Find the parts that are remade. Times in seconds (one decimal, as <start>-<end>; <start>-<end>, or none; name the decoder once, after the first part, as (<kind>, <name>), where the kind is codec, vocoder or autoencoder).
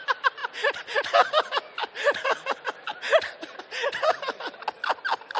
none